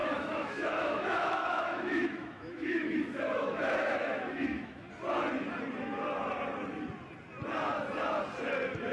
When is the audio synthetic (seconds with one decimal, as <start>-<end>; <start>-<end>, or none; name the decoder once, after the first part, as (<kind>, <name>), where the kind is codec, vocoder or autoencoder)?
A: 0.0-4.9 (autoencoder, DAC-VAE)